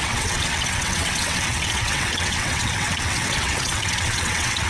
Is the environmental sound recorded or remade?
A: remade